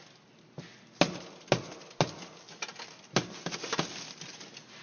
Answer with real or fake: real